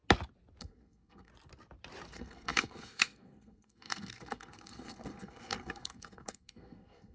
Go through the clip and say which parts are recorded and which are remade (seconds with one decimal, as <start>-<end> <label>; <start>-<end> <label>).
0.0-0.6 recorded; 0.6-1.3 remade; 1.3-2.1 recorded; 2.1-7.1 remade